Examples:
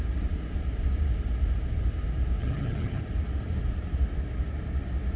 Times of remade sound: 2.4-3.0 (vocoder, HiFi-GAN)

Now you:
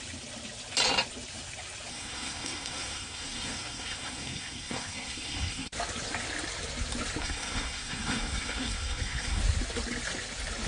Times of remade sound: 1.9-5.7 (codec, SNAC); 7.2-9.4

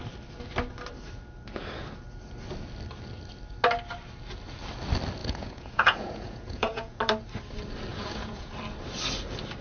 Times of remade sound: 5.2-7.0 (vocoder, Vocos); 7.9-8.5

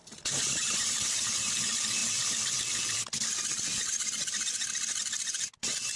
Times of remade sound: 0.0-1.5 (vocoder, BigVGAN v2)